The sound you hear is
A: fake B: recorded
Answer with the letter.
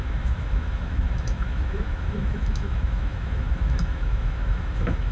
A